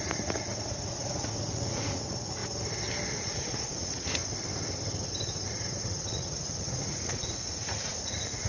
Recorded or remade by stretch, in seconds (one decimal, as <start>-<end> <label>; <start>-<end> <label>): 0.0-2.4 remade; 2.4-3.2 recorded; 3.2-4.2 remade; 4.2-5.8 recorded; 5.8-8.5 remade